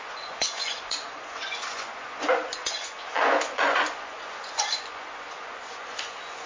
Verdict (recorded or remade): remade